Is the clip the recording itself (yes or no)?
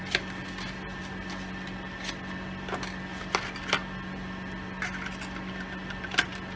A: yes